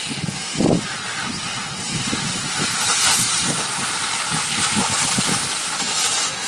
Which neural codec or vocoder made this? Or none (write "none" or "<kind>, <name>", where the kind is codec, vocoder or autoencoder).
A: none